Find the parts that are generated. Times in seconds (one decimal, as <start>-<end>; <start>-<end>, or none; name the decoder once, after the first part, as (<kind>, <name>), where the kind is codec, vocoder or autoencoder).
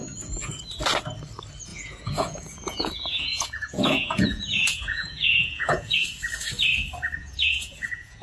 0.0-0.6 (vocoder, Vocos); 1.7-6.0; 7.2-8.2